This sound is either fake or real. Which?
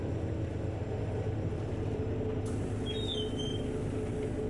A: real